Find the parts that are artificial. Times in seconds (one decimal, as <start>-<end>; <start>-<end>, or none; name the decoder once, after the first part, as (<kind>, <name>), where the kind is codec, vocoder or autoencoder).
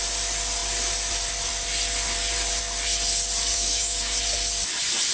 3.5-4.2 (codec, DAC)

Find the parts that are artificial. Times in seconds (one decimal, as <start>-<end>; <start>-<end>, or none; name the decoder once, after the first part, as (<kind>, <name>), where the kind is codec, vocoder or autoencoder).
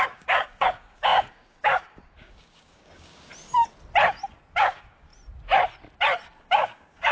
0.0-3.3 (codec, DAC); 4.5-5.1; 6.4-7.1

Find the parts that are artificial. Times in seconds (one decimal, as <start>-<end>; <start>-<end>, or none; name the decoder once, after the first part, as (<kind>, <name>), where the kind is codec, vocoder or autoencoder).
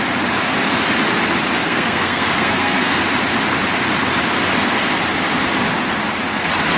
1.6-3.0 (codec, SNAC)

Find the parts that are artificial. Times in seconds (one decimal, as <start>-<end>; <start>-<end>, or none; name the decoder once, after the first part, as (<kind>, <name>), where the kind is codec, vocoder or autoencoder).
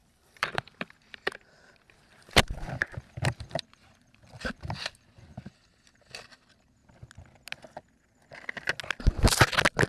0.0-4.2 (vocoder, BigVGAN v2)